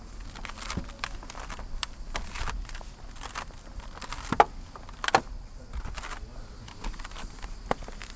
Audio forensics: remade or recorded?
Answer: recorded